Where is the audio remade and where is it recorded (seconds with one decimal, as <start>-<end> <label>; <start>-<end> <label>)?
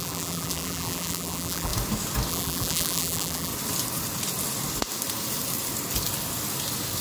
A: 0.0-1.7 remade; 1.7-2.3 recorded; 2.3-3.5 remade; 3.5-7.0 recorded